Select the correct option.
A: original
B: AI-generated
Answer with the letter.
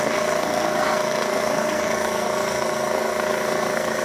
B